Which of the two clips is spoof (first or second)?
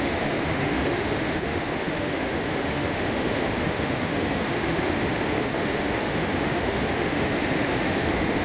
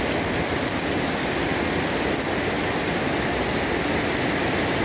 first